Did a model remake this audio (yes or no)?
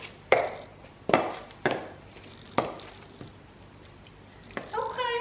yes